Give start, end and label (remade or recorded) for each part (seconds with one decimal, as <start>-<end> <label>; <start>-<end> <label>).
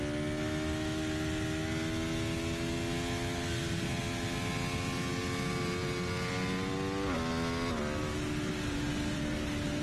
0.0-9.8 recorded